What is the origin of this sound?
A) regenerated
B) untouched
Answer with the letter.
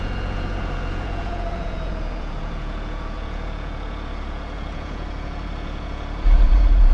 A